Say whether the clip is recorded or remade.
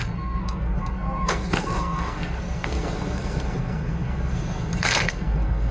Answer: remade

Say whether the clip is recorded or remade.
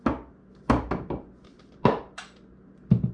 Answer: recorded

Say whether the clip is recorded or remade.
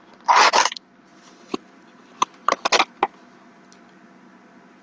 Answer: recorded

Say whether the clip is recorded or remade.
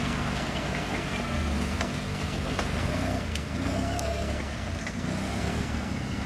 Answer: remade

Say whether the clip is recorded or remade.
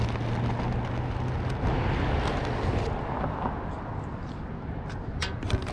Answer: recorded